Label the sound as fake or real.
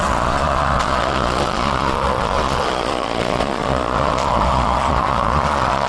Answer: fake